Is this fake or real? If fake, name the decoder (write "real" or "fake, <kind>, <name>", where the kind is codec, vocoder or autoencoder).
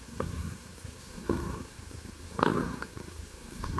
fake, codec, SNAC